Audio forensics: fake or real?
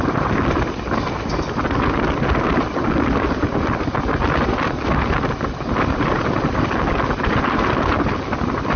real